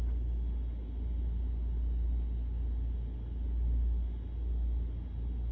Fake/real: real